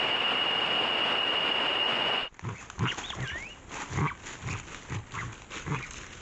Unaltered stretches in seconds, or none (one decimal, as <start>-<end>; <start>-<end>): 0.0-1.8; 2.3-6.2